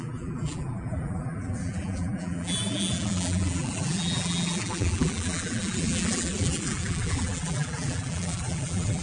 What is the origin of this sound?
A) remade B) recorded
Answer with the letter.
A